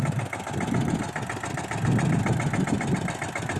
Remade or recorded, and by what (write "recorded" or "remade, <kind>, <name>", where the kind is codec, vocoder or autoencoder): recorded